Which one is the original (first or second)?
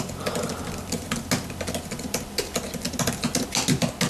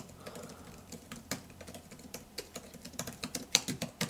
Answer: first